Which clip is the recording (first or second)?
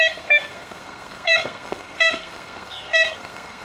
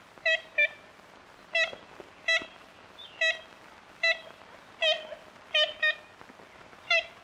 second